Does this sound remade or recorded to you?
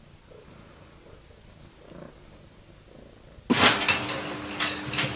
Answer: recorded